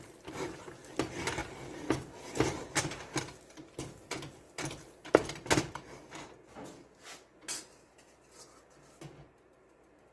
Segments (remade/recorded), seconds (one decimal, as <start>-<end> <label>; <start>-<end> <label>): 0.0-10.1 recorded